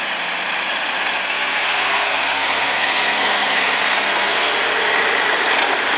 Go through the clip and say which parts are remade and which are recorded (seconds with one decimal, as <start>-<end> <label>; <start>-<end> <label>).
0.0-1.2 recorded; 1.2-4.5 remade; 4.5-6.0 recorded